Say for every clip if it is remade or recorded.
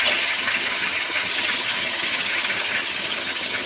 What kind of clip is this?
remade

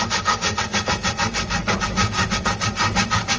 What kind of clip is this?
recorded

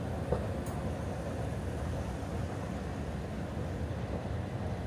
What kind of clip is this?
recorded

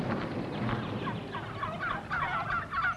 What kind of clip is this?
recorded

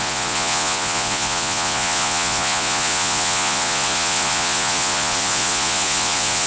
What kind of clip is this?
remade